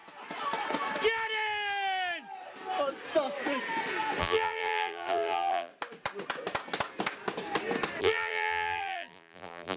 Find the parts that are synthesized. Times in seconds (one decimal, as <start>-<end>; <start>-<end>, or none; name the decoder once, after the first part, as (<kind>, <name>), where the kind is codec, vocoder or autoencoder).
4.2-5.7 (vocoder, BigVGAN v2); 8.0-9.8